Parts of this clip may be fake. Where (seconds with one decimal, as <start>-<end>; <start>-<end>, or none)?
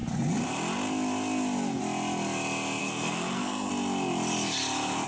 2.8-3.7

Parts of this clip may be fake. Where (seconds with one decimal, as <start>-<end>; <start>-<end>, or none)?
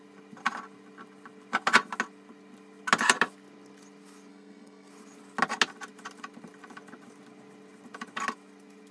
4.3-4.9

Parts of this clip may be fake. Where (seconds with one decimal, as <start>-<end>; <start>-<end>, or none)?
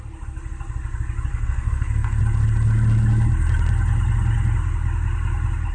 1.3-2.2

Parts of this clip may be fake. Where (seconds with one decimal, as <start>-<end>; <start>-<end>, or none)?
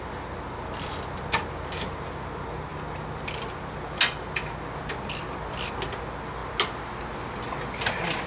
none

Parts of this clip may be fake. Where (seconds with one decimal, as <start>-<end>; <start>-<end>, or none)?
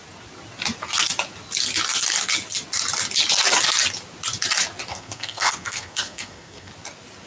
4.9-6.7